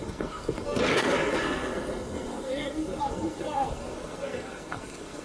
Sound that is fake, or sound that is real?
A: fake